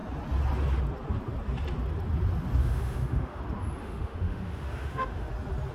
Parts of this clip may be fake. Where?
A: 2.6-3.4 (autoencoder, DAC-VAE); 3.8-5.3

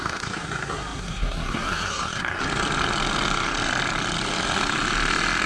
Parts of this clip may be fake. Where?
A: 0.0-2.4 (codec, SNAC)

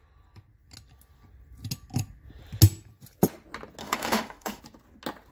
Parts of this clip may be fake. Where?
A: 3.8-4.6 (autoencoder, DAC-VAE)